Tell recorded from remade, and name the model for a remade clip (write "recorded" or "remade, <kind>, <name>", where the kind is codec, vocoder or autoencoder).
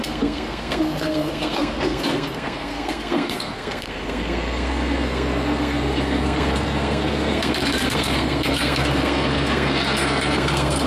remade, codec, SNAC